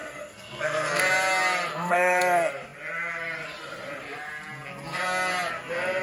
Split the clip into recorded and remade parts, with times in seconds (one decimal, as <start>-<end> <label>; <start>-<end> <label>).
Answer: 0.0-1.0 remade; 1.0-1.7 recorded; 1.7-2.2 remade; 2.2-6.0 recorded

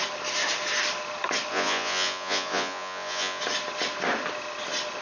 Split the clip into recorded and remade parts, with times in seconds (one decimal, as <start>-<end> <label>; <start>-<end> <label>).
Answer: 0.0-1.5 recorded; 1.5-3.4 remade; 3.4-5.0 recorded

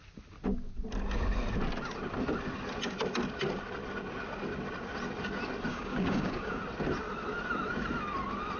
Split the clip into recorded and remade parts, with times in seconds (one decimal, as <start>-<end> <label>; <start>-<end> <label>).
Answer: 0.0-5.7 recorded; 5.7-6.6 remade; 6.6-8.6 recorded

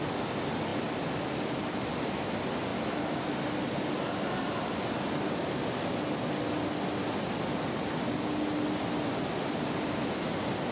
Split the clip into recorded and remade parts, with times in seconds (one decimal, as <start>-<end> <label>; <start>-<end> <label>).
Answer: 0.0-10.7 recorded

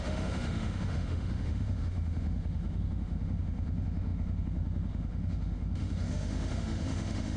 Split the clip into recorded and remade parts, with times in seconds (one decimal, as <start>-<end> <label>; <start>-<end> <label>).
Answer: 0.0-7.4 remade

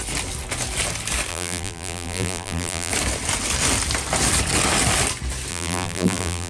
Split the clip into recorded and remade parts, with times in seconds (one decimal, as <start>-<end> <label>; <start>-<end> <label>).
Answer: 0.0-1.3 recorded; 1.3-2.9 remade; 2.9-5.5 recorded; 5.5-6.5 remade

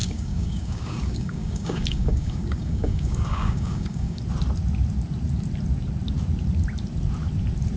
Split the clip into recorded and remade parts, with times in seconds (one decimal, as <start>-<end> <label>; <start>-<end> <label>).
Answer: 0.0-4.2 remade; 4.2-7.8 recorded

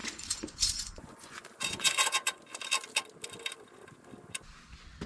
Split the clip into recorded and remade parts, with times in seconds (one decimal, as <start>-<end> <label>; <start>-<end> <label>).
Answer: 0.0-2.4 remade; 2.4-5.1 recorded